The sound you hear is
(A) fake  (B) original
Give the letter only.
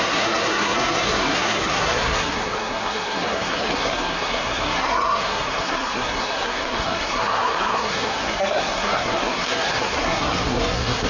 A